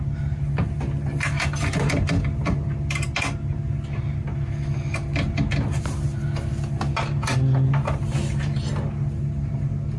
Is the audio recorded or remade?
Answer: recorded